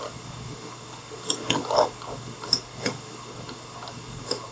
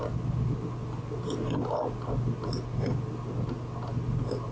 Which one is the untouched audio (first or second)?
second